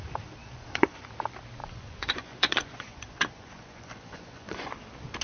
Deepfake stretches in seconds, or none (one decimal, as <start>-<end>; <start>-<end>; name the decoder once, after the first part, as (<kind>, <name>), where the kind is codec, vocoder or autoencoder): 0.4-1.1 (vocoder, Vocos); 1.6-4.7

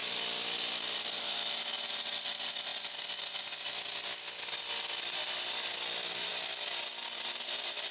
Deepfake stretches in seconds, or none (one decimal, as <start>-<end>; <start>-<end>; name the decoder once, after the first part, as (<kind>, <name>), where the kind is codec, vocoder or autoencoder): none